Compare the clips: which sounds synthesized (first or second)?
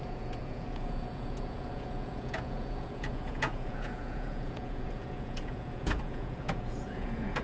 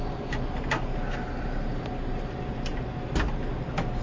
first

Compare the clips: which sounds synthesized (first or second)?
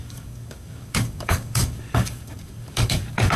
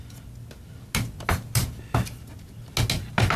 first